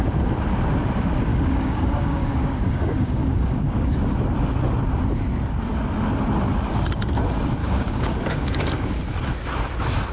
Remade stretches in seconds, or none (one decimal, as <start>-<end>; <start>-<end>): 1.3-3.9; 7.6-8.9